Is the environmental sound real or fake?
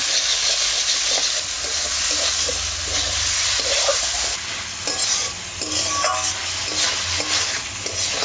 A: real